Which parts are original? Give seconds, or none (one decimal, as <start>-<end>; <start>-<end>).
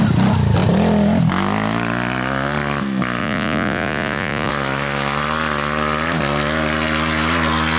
0.0-3.2; 4.5-7.8